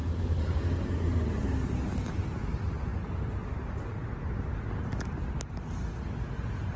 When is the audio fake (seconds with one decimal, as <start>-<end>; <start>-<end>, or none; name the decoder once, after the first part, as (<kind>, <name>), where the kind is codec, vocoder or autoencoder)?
none